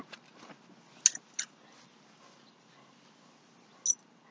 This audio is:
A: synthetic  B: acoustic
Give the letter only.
B